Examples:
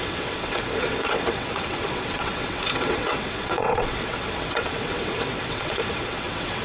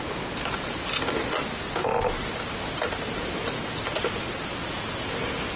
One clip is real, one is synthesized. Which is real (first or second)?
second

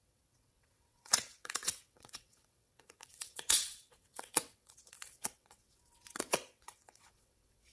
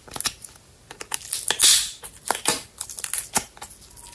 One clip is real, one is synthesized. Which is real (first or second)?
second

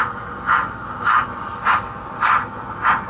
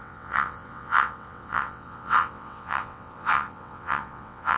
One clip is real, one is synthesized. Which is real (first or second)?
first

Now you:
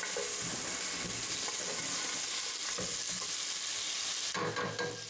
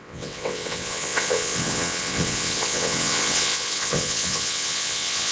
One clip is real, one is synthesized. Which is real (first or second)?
first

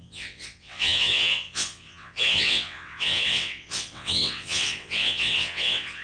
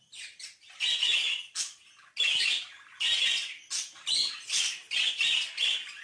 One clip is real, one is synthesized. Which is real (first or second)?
second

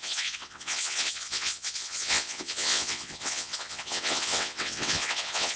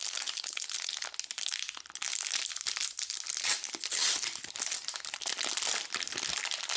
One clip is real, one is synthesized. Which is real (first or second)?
second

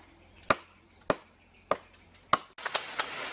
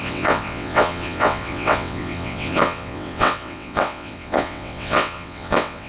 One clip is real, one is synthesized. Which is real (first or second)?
first